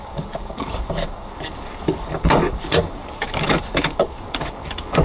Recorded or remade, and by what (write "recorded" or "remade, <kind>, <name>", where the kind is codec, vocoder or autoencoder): remade, codec, DAC